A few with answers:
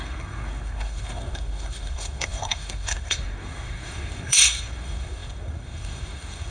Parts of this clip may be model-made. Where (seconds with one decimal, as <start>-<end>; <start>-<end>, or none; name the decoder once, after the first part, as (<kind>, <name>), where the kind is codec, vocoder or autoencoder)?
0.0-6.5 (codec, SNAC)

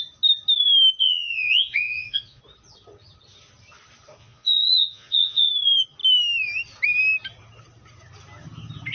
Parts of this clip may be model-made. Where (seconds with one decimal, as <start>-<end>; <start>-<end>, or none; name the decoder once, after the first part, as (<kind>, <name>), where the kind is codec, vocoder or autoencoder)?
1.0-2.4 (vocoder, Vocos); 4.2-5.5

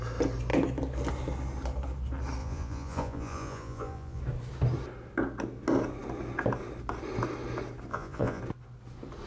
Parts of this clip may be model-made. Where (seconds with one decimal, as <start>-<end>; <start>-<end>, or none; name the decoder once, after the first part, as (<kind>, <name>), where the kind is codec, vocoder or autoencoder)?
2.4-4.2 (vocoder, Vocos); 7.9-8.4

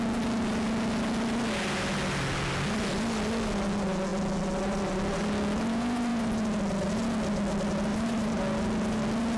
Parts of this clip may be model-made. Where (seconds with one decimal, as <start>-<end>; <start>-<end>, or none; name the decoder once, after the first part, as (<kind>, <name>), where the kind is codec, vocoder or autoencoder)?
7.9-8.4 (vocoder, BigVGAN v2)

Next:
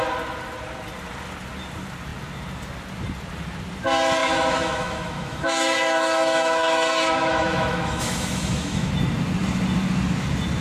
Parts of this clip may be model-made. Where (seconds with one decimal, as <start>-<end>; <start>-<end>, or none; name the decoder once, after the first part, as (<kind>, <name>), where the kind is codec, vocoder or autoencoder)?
4.2-8.9 (autoencoder, DAC-VAE)

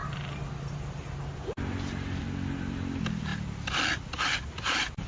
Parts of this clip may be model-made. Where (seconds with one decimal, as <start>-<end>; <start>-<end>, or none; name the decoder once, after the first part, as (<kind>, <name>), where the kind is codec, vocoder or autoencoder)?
none